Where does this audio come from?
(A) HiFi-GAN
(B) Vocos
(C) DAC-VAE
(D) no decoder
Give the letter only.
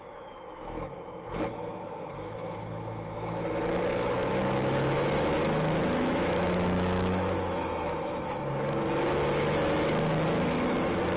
C